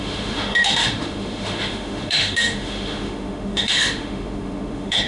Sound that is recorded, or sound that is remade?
remade